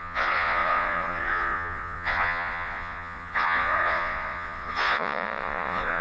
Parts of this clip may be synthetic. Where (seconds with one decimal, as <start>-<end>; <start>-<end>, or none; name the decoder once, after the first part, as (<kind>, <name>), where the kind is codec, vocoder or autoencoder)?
0.0-6.0 (vocoder, Vocos)